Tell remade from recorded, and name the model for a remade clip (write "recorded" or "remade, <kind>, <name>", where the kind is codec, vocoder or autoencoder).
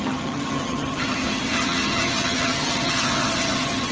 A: remade, vocoder, HiFi-GAN